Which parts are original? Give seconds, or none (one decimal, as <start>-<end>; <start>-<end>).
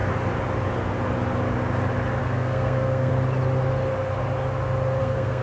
0.0-2.2; 3.1-5.0